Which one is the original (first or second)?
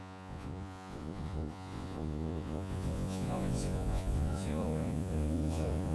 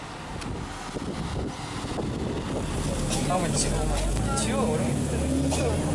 second